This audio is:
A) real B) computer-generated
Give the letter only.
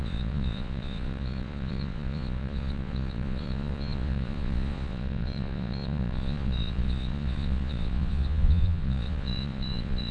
B